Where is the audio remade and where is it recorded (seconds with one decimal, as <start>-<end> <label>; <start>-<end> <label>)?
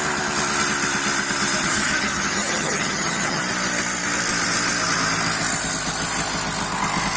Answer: 0.0-1.6 recorded; 1.6-3.4 remade; 3.4-7.2 recorded